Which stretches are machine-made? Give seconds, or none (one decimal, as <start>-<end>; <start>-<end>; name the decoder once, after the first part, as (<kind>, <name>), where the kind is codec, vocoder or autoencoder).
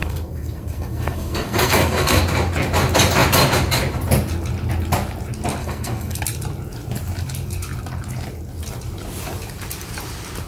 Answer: 0.0-2.2 (codec, SNAC); 5.6-6.2